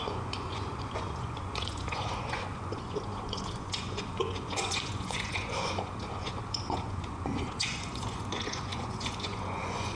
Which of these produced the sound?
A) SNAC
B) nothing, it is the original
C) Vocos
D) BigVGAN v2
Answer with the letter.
C